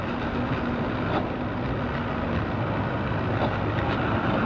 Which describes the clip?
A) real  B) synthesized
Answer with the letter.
A